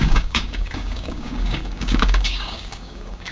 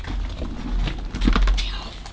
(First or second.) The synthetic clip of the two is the first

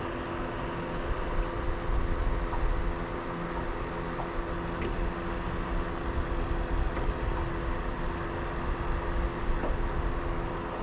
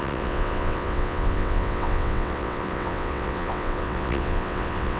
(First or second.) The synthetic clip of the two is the second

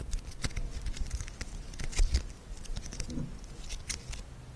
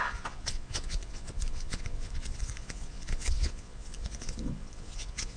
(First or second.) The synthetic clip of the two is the second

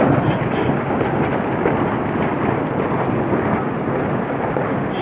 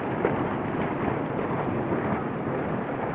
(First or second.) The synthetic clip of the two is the second